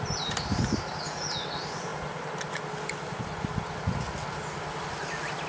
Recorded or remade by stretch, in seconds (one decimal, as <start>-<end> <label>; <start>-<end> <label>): 0.0-5.5 recorded